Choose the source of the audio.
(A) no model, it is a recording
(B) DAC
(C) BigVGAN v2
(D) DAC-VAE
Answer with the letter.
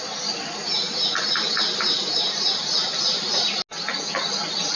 A